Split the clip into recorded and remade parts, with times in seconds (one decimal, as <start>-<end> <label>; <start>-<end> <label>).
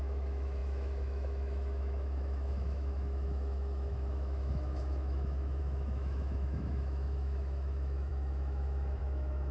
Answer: 0.0-9.5 remade